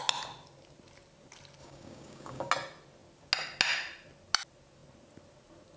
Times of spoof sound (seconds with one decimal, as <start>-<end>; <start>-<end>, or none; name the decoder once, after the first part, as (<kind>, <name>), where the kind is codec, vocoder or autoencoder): 1.6-2.5 (codec, DAC)